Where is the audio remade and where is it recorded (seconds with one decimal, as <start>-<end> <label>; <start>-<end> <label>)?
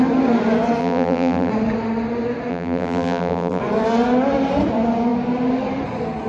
0.0-0.8 recorded; 0.8-1.5 remade; 1.5-2.5 recorded; 2.5-3.6 remade; 3.6-6.3 recorded